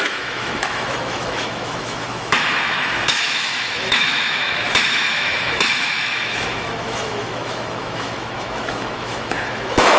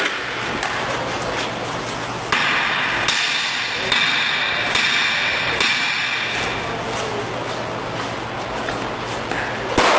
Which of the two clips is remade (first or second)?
first